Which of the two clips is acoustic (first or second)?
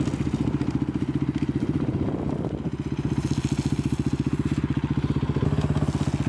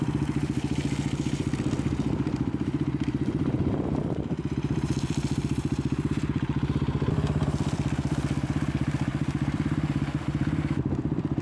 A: first